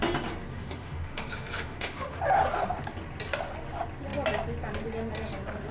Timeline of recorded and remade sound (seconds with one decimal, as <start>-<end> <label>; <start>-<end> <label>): 0.0-0.5 recorded; 0.5-2.2 remade; 2.2-5.7 recorded